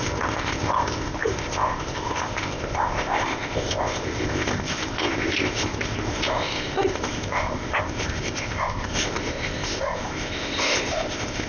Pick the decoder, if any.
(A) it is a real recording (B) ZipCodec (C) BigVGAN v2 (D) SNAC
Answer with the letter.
B